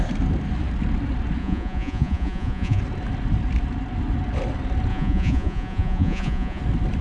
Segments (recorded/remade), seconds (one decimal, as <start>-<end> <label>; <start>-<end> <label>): 0.0-1.4 recorded; 1.4-2.8 remade; 2.8-4.9 recorded; 4.9-6.6 remade; 6.6-7.0 recorded